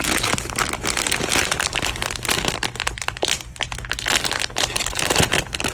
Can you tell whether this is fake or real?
real